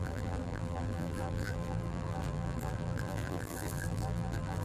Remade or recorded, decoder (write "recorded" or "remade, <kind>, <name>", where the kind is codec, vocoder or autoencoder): remade, vocoder, BigVGAN v2